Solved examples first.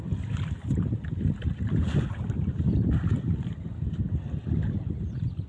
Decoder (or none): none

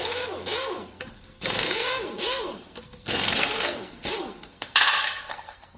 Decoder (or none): codec, SNAC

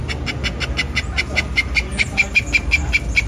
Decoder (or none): none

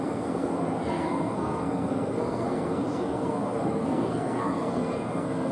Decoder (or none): codec, SNAC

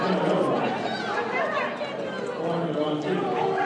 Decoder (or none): none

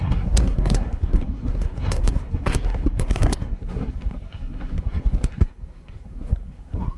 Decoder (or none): codec, SNAC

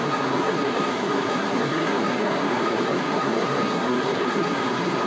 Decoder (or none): codec, SNAC